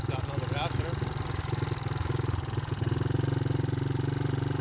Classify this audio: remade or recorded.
recorded